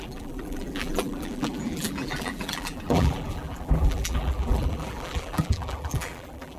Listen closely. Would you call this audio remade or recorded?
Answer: remade